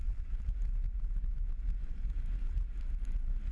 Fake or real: fake